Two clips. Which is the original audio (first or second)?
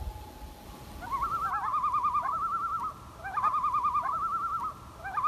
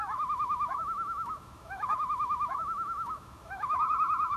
first